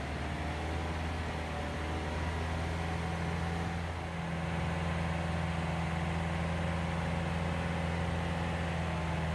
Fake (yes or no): no